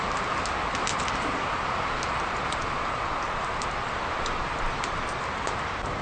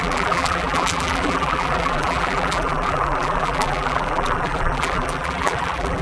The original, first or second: first